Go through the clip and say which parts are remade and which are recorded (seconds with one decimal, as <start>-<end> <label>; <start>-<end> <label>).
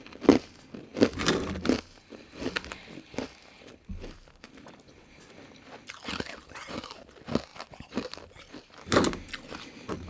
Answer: 0.0-10.1 recorded